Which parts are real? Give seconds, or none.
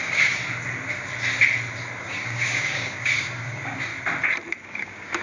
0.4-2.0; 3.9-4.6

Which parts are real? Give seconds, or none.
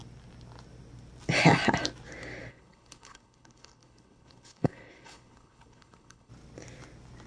0.0-2.5; 6.3-7.3